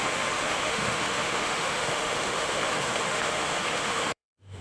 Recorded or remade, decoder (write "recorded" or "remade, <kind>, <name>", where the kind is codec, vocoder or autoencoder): remade, autoencoder, DAC-VAE